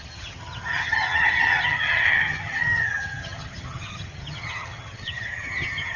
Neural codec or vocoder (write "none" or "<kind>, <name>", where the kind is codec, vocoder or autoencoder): vocoder, HiFi-GAN